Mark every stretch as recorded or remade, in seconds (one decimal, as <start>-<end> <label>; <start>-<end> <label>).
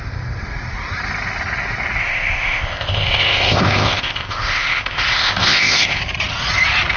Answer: 0.0-2.0 recorded; 2.0-6.0 remade; 6.0-7.0 recorded